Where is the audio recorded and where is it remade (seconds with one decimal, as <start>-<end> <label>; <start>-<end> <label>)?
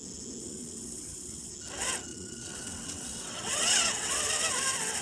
0.0-0.4 recorded; 0.4-1.5 remade; 1.5-2.1 recorded; 2.1-4.2 remade; 4.2-5.0 recorded